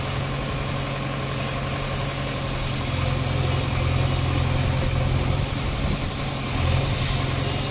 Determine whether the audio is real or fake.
real